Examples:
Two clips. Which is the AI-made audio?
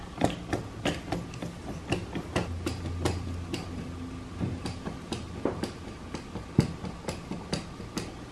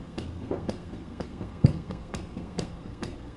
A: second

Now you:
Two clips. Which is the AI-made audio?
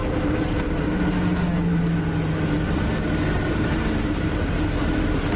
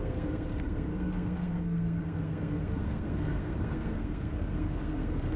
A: second